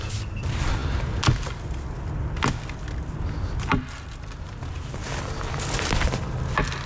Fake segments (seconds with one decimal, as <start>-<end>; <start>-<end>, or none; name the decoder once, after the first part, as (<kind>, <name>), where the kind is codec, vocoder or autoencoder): none